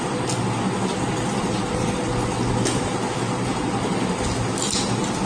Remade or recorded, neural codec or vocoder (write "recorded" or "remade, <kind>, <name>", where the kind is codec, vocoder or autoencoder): recorded